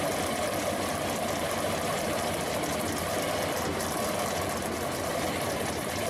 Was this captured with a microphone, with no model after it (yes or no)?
yes